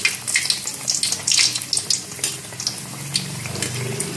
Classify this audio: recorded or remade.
recorded